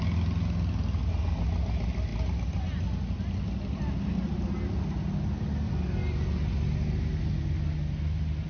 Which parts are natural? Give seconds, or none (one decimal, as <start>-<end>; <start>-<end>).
0.0-8.5